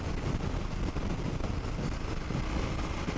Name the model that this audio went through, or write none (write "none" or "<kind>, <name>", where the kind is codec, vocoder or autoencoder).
none